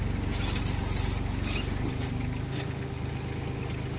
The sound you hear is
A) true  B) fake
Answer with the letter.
A